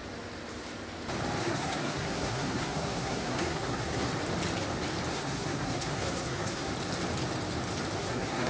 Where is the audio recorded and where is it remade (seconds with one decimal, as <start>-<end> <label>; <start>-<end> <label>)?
0.0-1.4 recorded; 1.4-4.1 remade; 4.1-5.1 recorded; 5.1-6.7 remade; 6.7-8.0 recorded; 8.0-8.5 remade